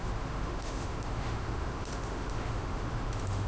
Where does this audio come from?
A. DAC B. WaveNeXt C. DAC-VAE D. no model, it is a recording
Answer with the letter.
C